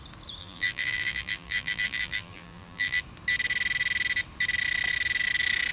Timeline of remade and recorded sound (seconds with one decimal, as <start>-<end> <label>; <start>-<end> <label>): 0.0-0.4 recorded; 0.4-3.0 remade; 3.0-5.7 recorded